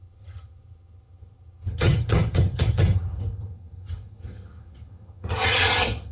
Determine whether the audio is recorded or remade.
remade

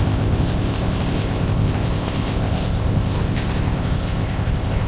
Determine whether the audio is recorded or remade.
remade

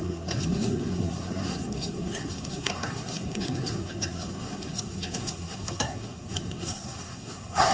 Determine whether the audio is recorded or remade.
remade